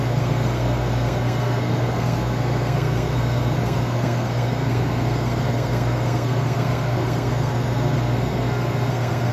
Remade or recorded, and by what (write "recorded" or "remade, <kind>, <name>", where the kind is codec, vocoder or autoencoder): remade, codec, SNAC